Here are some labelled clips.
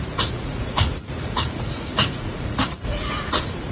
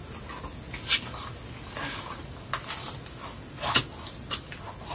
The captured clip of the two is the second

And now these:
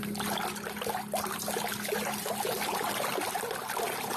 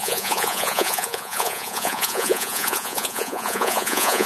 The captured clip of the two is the first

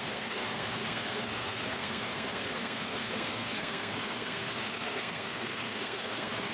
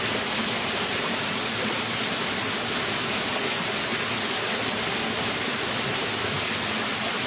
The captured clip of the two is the second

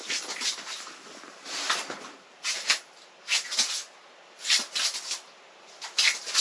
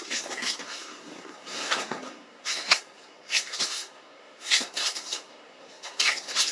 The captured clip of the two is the first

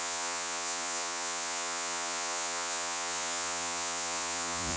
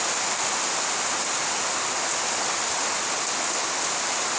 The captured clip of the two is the second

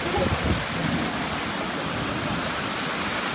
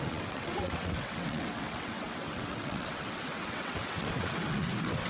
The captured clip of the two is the first